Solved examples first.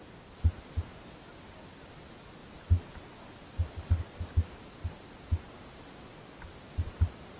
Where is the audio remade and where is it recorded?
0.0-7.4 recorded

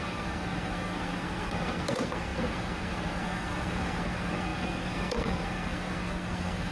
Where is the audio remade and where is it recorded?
0.0-6.7 remade